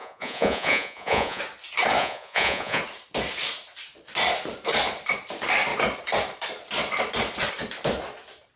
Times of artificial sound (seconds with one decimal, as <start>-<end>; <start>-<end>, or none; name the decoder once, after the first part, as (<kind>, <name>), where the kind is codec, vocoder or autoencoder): 0.0-1.4 (vocoder, Vocos); 2.0-2.8